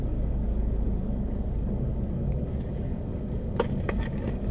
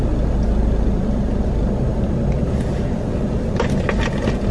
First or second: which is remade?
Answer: first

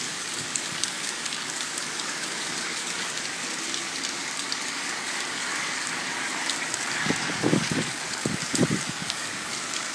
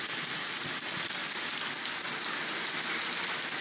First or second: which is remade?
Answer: first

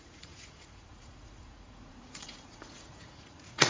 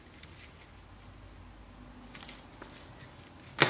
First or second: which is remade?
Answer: first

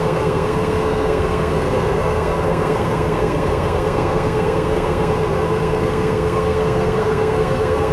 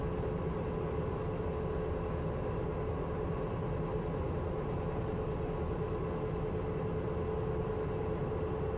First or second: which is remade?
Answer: first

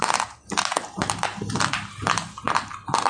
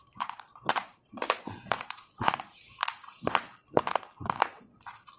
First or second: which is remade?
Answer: second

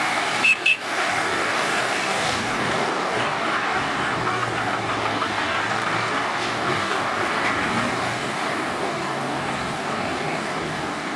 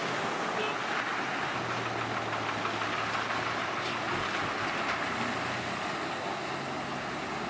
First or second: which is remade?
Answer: first